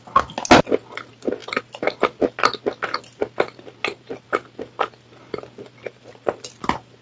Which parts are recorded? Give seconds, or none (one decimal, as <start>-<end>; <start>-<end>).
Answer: 0.0-7.0